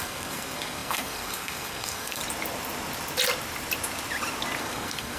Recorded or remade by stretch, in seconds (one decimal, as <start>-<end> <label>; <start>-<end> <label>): 0.0-2.2 remade; 2.2-4.6 recorded; 4.6-5.2 remade